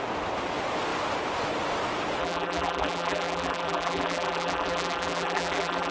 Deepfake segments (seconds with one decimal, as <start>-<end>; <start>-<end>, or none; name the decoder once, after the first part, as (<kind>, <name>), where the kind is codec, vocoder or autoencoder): 2.2-5.9 (vocoder, BigVGAN v2)